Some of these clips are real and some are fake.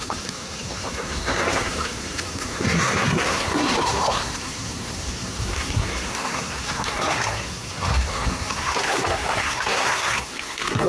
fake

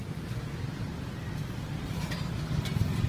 real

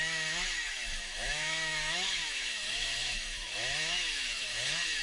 fake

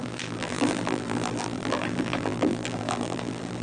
fake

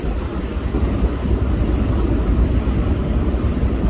real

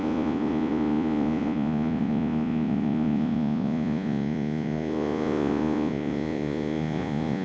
fake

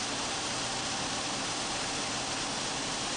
real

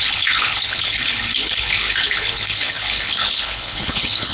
fake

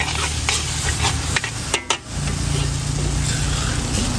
real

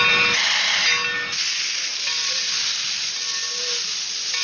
real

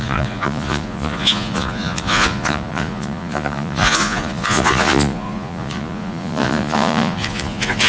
fake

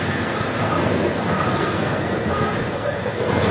fake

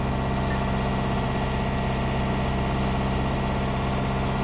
real